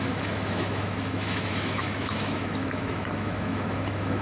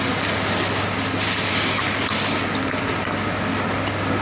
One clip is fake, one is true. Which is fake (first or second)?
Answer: first